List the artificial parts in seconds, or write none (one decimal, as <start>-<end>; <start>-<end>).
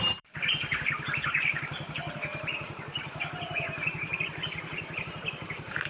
0.0-5.9